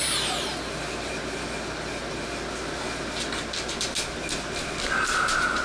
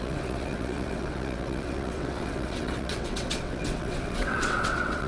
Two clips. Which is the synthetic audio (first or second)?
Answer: second